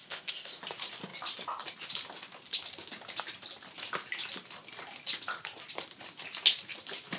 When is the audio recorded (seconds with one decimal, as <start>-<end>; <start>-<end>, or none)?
0.6-7.2